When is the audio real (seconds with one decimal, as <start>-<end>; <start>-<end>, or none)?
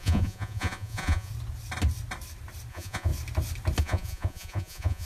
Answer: 1.3-2.7; 3.1-3.8